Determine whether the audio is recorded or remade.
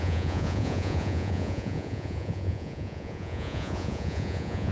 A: remade